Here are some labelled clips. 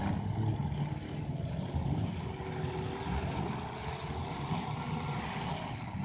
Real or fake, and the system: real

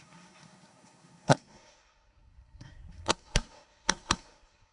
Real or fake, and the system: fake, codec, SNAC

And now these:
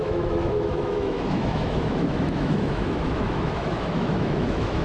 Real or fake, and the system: fake, autoencoder, DAC-VAE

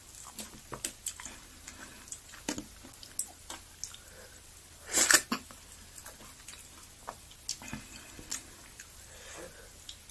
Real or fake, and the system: real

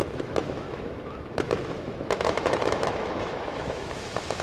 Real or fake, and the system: fake, autoencoder, DAC-VAE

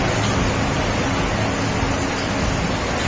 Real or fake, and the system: real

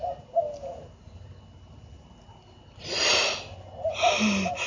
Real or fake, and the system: real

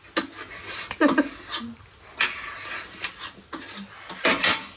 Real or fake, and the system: real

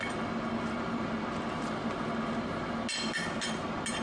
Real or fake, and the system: real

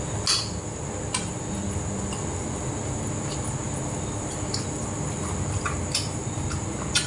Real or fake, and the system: real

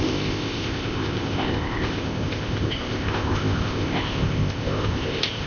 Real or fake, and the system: fake, codec, ZipCodec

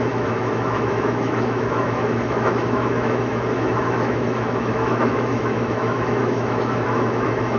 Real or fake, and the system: fake, autoencoder, DAC-VAE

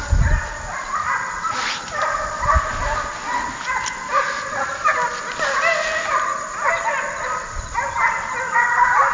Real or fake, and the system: real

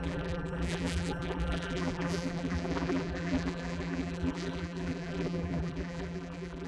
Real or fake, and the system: fake, vocoder, BigVGAN v2